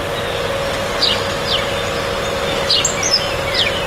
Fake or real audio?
real